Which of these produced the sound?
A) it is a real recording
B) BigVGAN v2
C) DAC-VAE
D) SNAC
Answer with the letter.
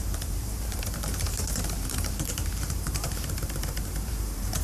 B